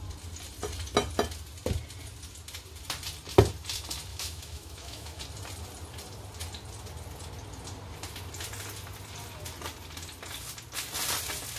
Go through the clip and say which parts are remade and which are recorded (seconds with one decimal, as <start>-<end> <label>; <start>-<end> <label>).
0.0-4.1 recorded; 4.1-5.2 remade; 5.2-11.6 recorded

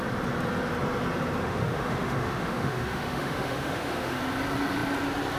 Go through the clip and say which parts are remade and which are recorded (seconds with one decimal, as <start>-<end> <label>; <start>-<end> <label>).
0.0-1.4 recorded; 1.4-4.2 remade; 4.2-5.4 recorded

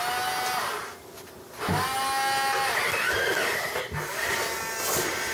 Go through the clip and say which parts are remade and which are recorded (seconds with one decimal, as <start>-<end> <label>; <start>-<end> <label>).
0.0-5.3 recorded

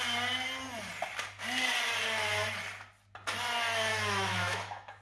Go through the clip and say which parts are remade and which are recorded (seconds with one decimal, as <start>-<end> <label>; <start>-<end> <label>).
0.0-3.9 recorded; 3.9-5.0 remade

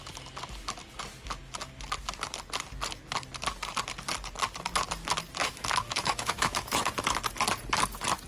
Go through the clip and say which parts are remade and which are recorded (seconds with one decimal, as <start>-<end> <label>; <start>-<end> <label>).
0.0-5.4 recorded; 5.4-6.9 remade; 6.9-8.3 recorded

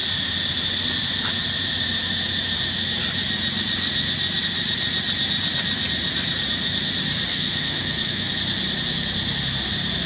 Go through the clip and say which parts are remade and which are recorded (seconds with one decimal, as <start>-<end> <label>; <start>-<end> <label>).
0.0-7.3 recorded; 7.3-8.3 remade; 8.3-10.1 recorded